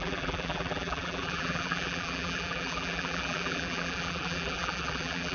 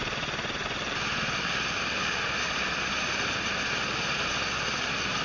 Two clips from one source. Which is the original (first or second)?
second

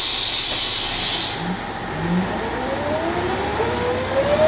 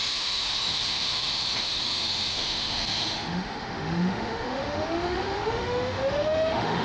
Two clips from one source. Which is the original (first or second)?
first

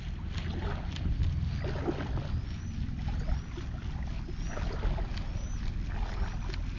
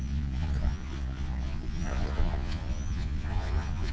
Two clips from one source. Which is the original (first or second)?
first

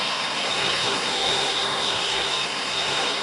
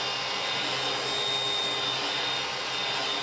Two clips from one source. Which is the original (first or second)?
second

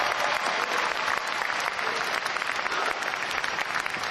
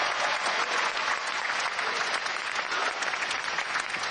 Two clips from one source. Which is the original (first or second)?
first